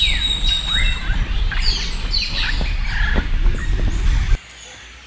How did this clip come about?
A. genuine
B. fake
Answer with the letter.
A